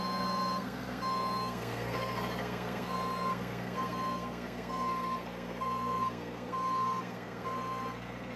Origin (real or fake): fake